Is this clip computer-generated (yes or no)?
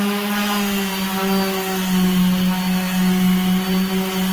no